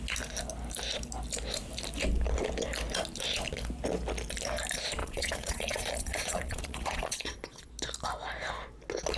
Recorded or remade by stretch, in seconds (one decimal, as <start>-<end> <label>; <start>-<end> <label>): 0.0-5.0 recorded; 5.0-7.7 remade; 7.7-9.2 recorded